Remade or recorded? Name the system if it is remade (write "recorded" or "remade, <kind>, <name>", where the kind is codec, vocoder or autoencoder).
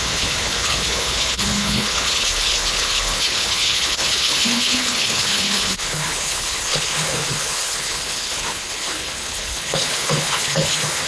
remade, codec, HILCodec